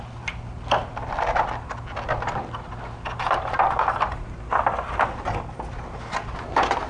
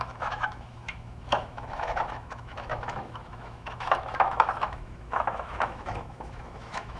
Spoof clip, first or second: second